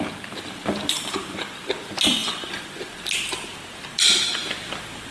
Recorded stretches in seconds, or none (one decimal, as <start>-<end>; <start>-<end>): 0.0-2.2; 3.0-5.1